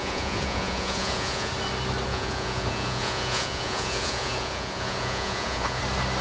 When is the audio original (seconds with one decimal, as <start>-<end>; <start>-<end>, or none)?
1.5-2.1; 5.8-6.2